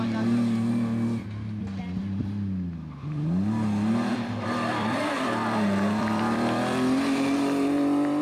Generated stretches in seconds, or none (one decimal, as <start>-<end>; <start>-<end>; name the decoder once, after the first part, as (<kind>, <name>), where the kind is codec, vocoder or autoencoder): 4.1-8.2 (vocoder, BigVGAN v2)